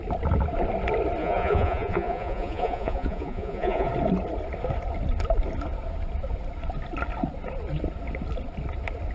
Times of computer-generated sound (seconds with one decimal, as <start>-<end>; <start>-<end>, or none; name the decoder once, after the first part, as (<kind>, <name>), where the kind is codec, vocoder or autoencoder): 1.2-3.9 (vocoder, Vocos)